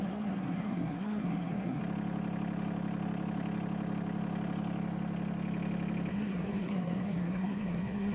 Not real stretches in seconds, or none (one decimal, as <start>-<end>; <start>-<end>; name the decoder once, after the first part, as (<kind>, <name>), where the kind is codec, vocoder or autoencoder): 0.0-1.8 (codec, SNAC); 6.1-8.1